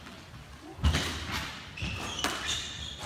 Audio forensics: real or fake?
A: real